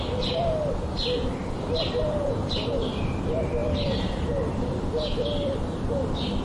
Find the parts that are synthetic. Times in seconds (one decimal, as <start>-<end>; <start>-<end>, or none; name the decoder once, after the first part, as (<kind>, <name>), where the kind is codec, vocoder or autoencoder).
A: 1.4-2.7 (vocoder, BigVGAN v2); 3.6-5.6